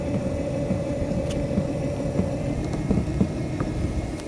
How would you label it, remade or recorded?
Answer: recorded